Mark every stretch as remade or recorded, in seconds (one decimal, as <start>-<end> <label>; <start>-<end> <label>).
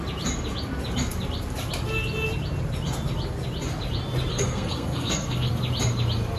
0.0-4.3 recorded; 4.3-5.5 remade; 5.5-6.4 recorded